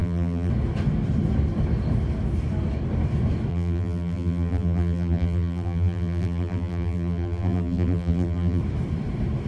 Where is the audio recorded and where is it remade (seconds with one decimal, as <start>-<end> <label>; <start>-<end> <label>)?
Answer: 0.0-0.5 remade; 0.5-3.5 recorded; 3.5-8.6 remade; 8.6-9.5 recorded